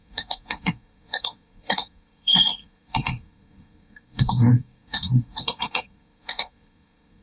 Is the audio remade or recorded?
remade